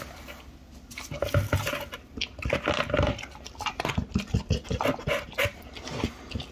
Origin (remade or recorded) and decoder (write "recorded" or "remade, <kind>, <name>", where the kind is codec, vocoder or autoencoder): recorded